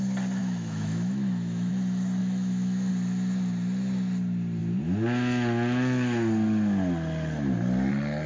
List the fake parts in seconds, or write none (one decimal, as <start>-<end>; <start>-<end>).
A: 0.4-1.7; 2.2-2.9